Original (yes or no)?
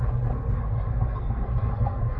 no